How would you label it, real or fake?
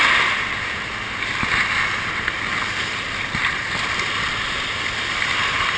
real